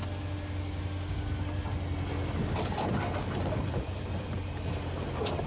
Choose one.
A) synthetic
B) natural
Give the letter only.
B